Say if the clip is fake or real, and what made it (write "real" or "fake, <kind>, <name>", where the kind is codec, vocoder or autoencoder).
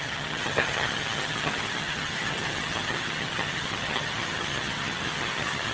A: fake, vocoder, HiFi-GAN